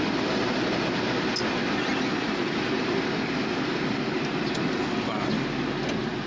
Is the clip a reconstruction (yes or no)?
no